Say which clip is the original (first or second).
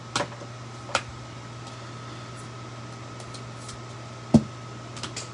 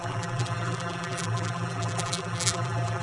first